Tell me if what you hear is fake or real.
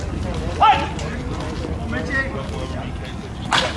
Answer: real